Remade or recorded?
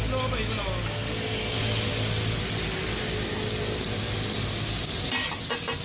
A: recorded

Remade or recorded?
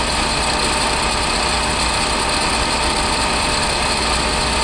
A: remade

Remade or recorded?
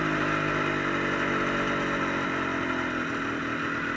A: recorded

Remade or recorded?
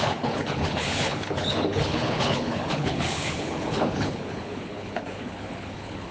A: remade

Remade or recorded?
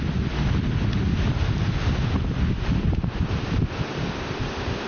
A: recorded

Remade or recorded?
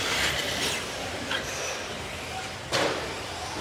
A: recorded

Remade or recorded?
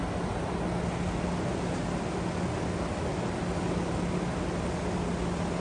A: recorded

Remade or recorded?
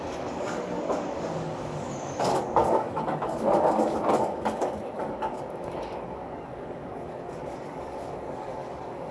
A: remade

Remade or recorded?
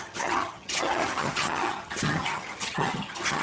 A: remade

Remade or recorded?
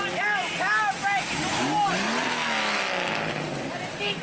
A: recorded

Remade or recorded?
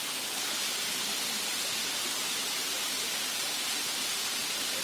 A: recorded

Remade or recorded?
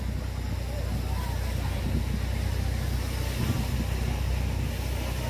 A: recorded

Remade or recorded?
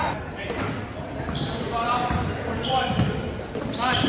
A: recorded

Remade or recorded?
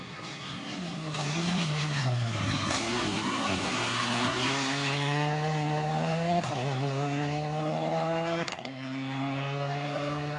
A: remade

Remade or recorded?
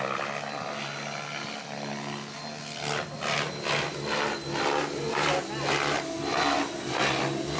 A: recorded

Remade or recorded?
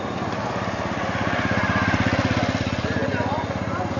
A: recorded